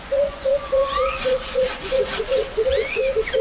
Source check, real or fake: fake